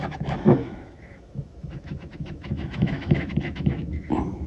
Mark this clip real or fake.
fake